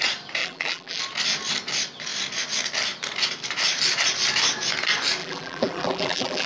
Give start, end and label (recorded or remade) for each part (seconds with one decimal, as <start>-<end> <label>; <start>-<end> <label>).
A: 0.0-0.4 recorded; 0.4-1.0 remade; 1.0-5.2 recorded; 5.2-6.5 remade